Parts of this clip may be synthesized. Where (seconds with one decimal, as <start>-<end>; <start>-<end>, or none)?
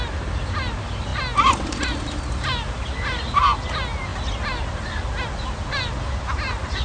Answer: none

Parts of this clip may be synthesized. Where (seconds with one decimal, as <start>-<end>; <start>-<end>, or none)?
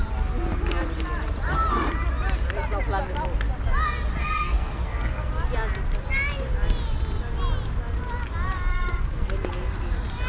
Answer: 4.2-5.3; 8.7-9.3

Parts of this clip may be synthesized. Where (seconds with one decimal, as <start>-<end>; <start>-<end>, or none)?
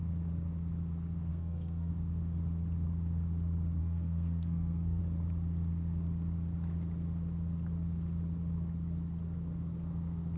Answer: 1.3-1.9; 3.8-5.0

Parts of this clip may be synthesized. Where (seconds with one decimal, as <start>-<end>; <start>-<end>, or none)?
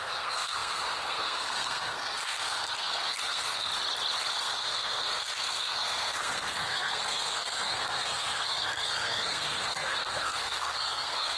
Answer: 0.0-3.7; 4.3-11.4